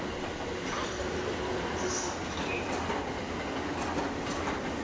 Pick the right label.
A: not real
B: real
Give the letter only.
B